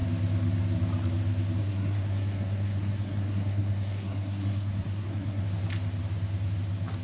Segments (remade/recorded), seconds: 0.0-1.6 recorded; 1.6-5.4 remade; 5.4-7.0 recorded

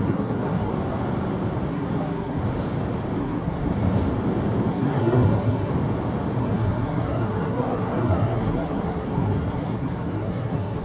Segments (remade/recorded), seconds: 0.0-0.7 remade; 0.7-1.7 recorded; 1.7-2.4 remade; 2.4-3.2 recorded; 3.2-3.7 remade; 3.7-4.7 recorded; 4.7-5.7 remade; 5.7-6.4 recorded; 6.4-10.8 remade